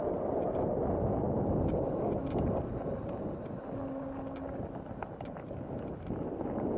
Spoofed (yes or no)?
no